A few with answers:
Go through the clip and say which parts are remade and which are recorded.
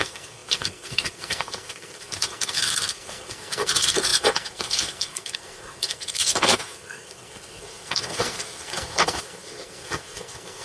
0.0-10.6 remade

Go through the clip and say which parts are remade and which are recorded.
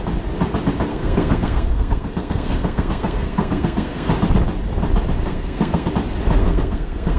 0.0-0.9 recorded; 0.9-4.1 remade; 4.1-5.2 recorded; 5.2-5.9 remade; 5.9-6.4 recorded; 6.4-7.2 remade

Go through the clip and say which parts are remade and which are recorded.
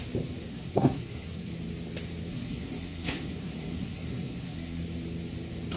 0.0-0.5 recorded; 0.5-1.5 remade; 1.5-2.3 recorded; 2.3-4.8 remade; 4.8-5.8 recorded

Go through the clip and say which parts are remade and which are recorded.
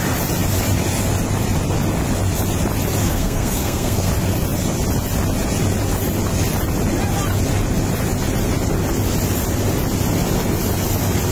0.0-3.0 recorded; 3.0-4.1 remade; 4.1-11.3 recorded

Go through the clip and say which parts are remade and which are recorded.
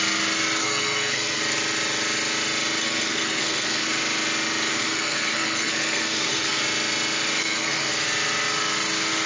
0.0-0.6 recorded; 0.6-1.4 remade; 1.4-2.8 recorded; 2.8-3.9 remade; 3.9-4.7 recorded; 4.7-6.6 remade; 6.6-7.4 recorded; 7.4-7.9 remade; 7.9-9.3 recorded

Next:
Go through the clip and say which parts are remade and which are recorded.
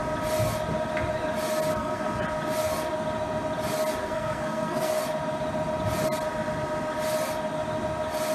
0.0-1.7 recorded; 1.7-2.2 remade; 2.2-4.0 recorded; 4.0-5.0 remade; 5.0-8.3 recorded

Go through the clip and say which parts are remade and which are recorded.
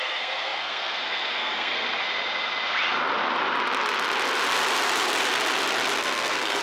0.0-2.0 remade; 2.0-6.0 recorded; 6.0-6.6 remade